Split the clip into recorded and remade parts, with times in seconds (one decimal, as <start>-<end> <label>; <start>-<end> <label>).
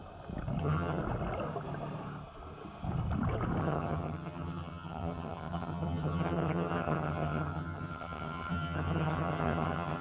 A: 0.0-0.6 recorded; 0.6-1.0 remade; 1.0-3.6 recorded; 3.6-10.0 remade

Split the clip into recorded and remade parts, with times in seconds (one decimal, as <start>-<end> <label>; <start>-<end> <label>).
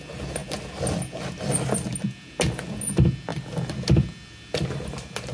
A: 0.0-5.3 recorded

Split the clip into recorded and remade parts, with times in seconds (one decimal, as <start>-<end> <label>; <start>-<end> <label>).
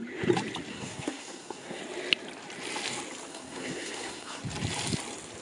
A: 0.0-0.7 recorded; 0.7-1.8 remade; 1.8-3.3 recorded; 3.3-4.4 remade; 4.4-5.4 recorded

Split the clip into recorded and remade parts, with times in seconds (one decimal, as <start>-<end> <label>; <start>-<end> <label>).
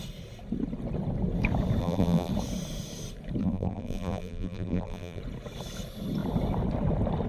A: 0.0-1.8 recorded; 1.8-2.3 remade; 2.3-3.4 recorded; 3.4-5.2 remade; 5.2-7.3 recorded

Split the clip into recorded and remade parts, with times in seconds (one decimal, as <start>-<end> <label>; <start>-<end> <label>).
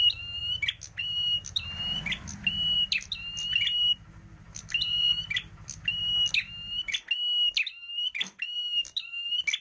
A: 0.0-0.4 remade; 0.4-1.0 recorded; 1.0-6.1 remade; 6.1-7.7 recorded; 7.7-9.6 remade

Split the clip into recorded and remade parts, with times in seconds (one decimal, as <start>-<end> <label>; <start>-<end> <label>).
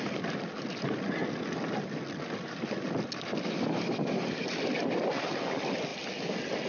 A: 0.0-6.7 recorded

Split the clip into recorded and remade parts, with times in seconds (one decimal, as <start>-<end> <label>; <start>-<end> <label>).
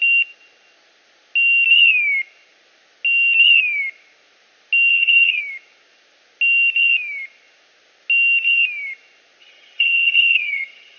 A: 0.0-4.9 recorded; 4.9-5.4 remade; 5.4-9.4 recorded; 9.4-11.0 remade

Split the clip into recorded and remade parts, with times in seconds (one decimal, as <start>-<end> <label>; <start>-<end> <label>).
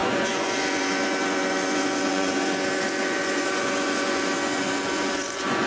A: 0.0-5.7 remade